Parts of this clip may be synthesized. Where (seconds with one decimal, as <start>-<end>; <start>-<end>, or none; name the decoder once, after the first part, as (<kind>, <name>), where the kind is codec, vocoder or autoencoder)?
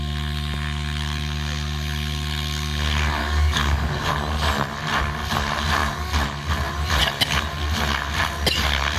3.2-4.1 (codec, DAC)